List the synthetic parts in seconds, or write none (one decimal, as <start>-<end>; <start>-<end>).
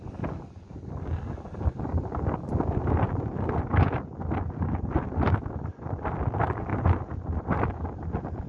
none